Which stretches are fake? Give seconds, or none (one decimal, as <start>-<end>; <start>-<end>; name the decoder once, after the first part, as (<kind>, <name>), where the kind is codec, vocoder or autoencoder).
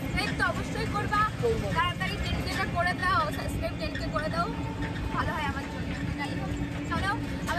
none